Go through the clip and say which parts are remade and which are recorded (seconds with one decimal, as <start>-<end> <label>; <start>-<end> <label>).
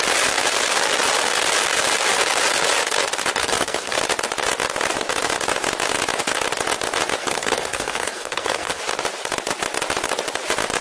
0.0-3.4 recorded; 3.4-4.0 remade; 4.0-7.2 recorded; 7.2-8.8 remade; 8.8-10.8 recorded